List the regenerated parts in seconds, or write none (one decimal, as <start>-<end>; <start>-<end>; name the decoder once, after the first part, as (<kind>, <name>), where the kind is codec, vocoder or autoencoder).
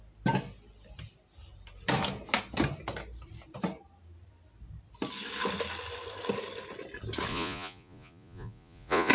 7.3-9.1 (vocoder, Vocos)